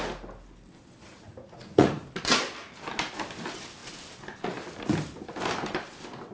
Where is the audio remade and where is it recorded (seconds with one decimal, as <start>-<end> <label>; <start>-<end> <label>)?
0.0-1.0 recorded; 1.0-2.1 remade; 2.1-6.3 recorded